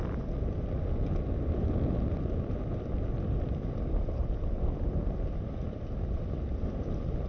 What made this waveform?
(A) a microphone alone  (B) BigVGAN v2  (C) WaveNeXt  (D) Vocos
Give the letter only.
A